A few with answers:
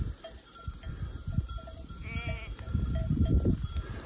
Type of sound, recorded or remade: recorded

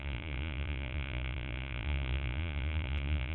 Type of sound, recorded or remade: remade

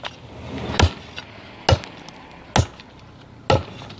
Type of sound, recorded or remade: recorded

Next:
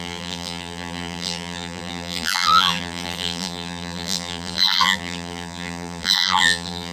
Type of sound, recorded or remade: remade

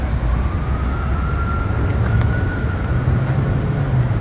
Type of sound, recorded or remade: recorded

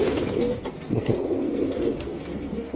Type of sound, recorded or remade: remade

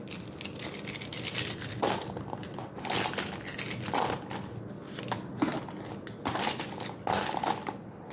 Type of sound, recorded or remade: recorded